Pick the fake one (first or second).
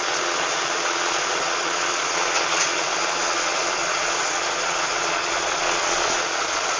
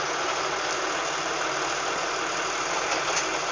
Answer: first